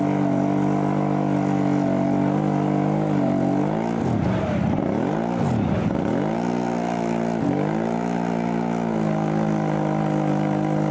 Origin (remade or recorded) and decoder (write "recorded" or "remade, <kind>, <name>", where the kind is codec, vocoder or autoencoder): recorded